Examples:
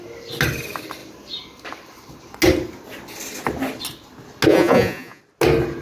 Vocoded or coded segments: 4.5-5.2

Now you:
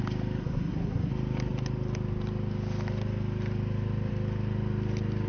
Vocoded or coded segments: 0.4-1.1

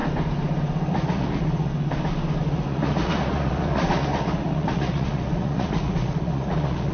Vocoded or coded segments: 0.9-1.7; 2.4-6.9

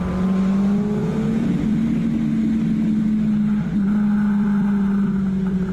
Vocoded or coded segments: 1.0-1.5

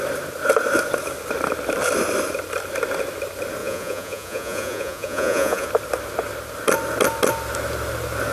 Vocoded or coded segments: 3.6-5.7

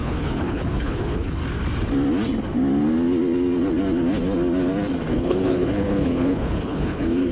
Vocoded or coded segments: 0.0-1.4; 5.1-7.3